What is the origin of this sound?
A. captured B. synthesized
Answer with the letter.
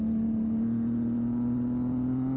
A